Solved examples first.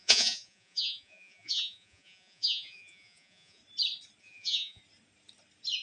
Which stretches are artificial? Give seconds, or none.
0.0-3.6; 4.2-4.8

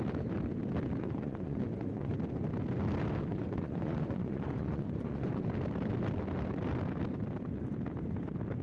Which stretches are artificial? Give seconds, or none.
1.0-2.1; 3.3-5.4

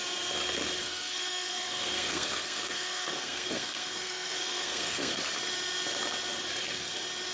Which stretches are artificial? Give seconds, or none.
0.8-5.2

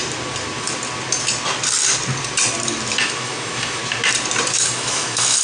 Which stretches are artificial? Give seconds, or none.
3.0-3.8; 4.5-5.4

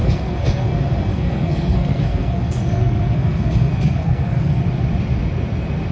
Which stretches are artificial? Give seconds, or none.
0.0-0.7; 1.1-4.6

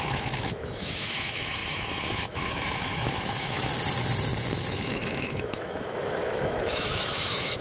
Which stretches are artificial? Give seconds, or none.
0.0-3.7; 4.7-7.6

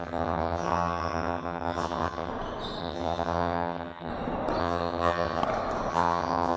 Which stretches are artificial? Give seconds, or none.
0.0-2.3; 2.8-4.1; 4.6-5.4; 5.9-6.6

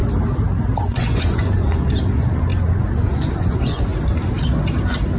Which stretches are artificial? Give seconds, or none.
0.8-3.9